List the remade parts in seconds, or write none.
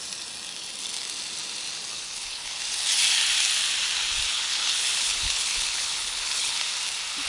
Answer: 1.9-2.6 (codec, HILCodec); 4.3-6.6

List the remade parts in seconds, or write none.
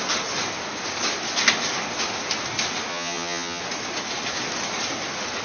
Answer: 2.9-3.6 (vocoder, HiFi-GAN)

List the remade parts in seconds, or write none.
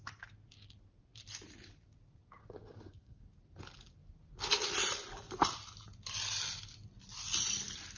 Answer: 2.4-3.2 (codec, SNAC)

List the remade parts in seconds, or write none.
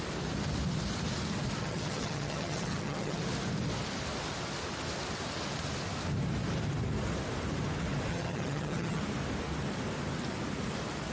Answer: 1.6-3.2 (vocoder, HiFi-GAN); 8.1-9.0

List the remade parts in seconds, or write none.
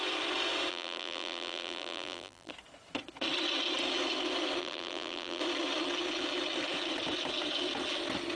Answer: 0.7-2.5 (vocoder, BigVGAN v2); 4.6-5.4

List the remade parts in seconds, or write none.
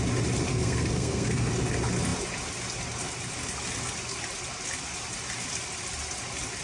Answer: 0.5-1.5 (codec, SNAC)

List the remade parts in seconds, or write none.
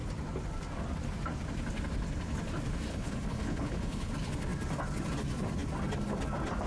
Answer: 2.9-4.1 (codec, HILCodec)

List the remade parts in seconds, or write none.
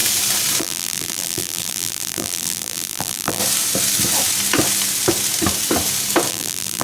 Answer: 0.6-3.4 (vocoder, BigVGAN v2); 6.3-6.8